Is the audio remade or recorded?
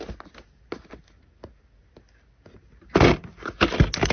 recorded